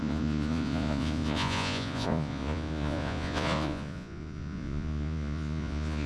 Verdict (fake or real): fake